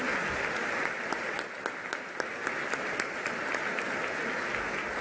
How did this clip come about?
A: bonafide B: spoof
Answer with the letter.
A